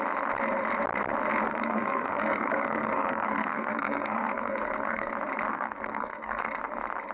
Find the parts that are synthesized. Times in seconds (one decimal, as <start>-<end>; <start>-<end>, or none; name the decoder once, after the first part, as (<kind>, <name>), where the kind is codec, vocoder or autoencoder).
1.5-5.1 (codec, SNAC); 5.5-6.4